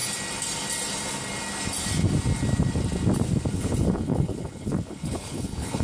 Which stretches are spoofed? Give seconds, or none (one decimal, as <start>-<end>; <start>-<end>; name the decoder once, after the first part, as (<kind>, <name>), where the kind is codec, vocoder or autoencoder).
3.5-5.8 (codec, HILCodec)